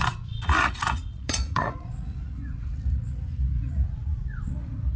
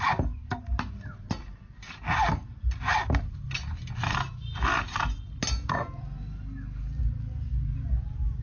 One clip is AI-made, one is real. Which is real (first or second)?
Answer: second